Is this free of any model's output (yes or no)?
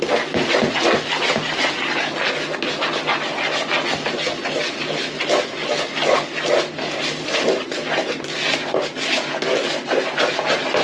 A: yes